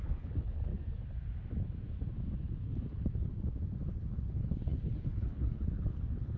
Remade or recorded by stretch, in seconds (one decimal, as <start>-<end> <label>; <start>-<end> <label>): 0.0-0.7 remade; 0.7-2.4 recorded; 2.4-3.3 remade; 3.3-3.9 recorded; 3.9-6.4 remade

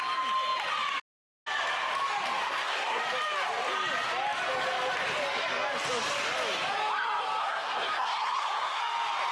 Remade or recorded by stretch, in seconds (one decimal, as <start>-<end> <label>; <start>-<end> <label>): 0.0-2.4 recorded; 2.4-3.0 remade; 3.0-7.4 recorded; 7.4-8.8 remade; 8.8-9.3 recorded

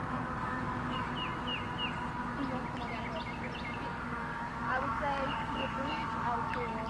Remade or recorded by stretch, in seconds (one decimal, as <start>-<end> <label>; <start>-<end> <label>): 0.0-1.1 remade; 1.1-3.9 recorded; 3.9-6.9 remade

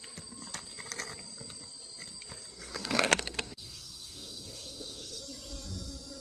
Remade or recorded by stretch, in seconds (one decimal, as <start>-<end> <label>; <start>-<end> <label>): 0.0-2.5 recorded; 2.5-5.2 remade; 5.2-6.2 recorded

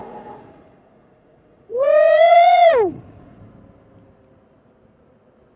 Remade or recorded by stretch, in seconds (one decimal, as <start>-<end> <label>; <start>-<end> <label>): 0.0-3.4 remade; 3.4-5.6 recorded